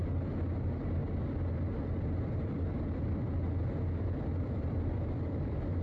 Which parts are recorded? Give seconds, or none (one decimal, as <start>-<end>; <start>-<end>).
0.0-0.6; 1.0-4.0